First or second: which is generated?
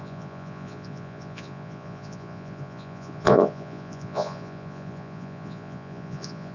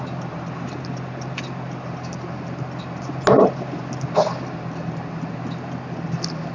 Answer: first